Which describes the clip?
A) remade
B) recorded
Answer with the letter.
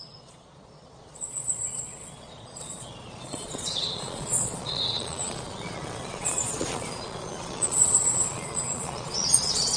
A